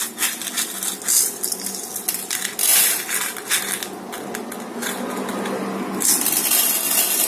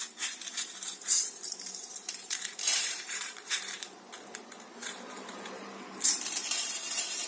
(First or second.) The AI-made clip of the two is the second